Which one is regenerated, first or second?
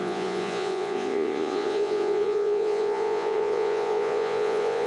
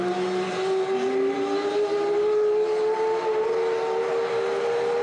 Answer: first